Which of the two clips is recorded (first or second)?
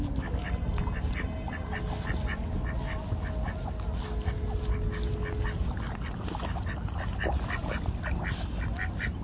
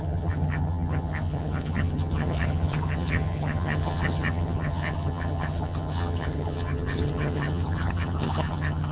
first